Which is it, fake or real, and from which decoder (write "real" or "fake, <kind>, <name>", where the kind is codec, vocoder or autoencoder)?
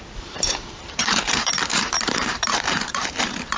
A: fake, vocoder, BigVGAN v2